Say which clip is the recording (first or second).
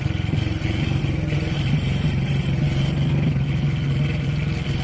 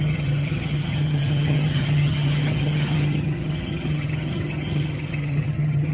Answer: first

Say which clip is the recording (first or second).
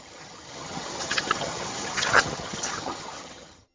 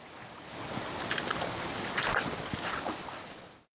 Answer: second